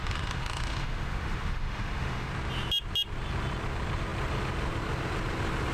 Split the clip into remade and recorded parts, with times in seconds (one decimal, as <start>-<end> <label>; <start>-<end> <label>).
0.0-2.3 remade; 2.3-5.7 recorded